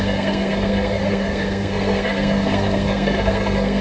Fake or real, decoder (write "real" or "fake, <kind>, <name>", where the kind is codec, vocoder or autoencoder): fake, codec, SNAC